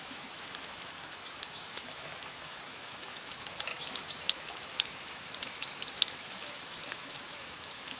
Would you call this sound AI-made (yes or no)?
yes